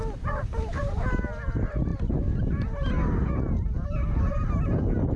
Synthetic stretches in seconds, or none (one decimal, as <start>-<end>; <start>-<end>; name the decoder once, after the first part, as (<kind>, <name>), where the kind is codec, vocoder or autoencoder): none

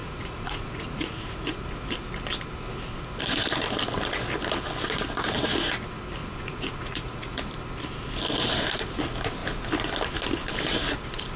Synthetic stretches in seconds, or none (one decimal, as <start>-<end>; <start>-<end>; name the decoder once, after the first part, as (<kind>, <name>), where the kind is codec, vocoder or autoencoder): 0.0-1.5 (vocoder, Vocos); 6.2-7.4

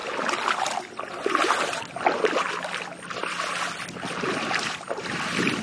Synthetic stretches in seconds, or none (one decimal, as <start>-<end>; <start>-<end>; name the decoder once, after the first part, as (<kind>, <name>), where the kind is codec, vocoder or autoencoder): none